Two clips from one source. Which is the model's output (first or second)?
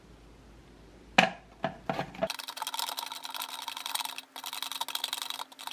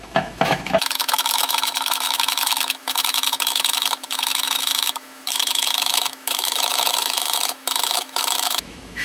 second